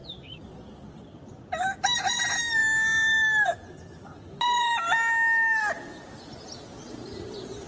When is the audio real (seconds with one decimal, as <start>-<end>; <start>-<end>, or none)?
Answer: 0.0-7.7